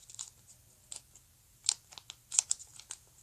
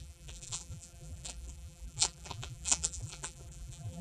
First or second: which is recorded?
first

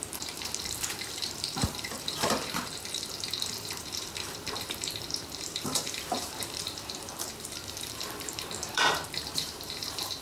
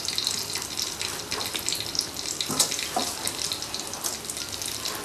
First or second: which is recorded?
second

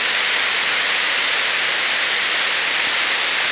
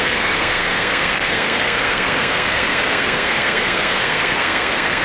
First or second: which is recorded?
first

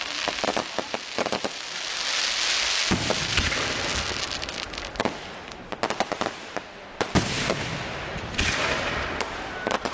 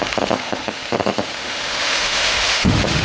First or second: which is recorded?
first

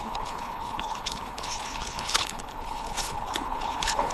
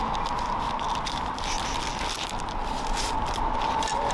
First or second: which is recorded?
second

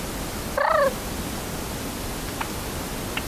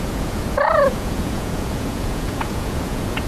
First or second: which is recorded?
first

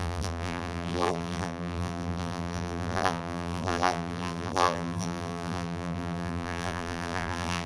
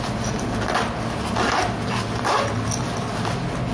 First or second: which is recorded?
second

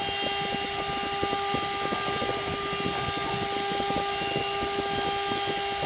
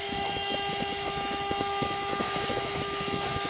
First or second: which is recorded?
first